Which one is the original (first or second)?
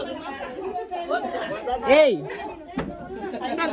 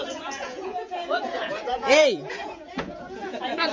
first